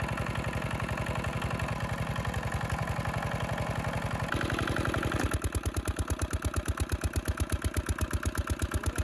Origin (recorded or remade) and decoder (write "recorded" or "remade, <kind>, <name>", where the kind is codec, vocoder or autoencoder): recorded